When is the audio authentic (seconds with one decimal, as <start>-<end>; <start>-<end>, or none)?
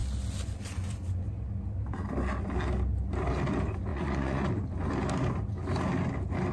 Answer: 0.0-3.9; 4.5-6.5